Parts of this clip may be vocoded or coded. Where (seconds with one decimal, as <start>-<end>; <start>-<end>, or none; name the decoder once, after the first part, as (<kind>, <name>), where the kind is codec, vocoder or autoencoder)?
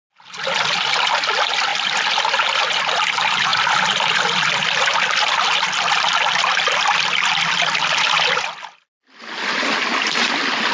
none